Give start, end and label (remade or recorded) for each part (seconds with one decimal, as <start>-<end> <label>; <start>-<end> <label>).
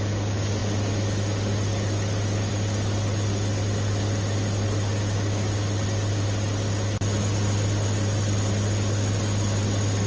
0.0-10.1 recorded